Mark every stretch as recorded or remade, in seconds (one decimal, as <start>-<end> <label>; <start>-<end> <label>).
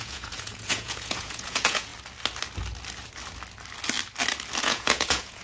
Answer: 0.0-1.9 remade; 1.9-4.6 recorded; 4.6-5.4 remade